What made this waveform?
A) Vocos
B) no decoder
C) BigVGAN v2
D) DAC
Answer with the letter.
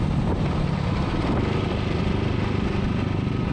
C